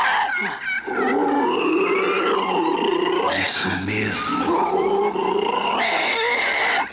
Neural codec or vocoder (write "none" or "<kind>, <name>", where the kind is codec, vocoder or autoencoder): none